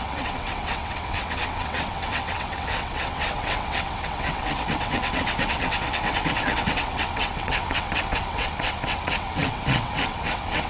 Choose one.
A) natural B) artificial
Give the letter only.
B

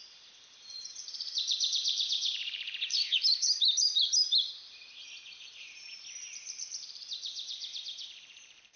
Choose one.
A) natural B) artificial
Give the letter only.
B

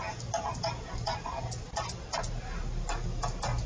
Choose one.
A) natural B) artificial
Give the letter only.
A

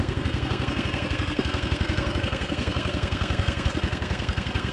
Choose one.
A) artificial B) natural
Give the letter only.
A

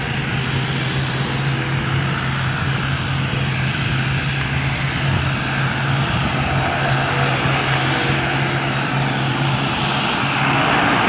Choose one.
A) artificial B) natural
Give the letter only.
B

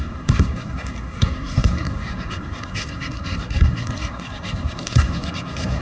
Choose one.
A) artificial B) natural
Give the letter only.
A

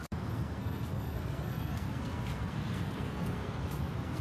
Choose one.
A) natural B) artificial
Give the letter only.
B